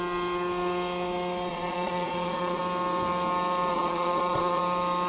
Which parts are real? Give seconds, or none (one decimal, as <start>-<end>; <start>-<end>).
0.0-1.5; 2.6-3.7; 4.6-5.1